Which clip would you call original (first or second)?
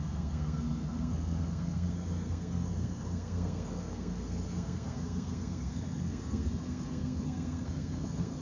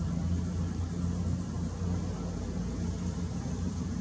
second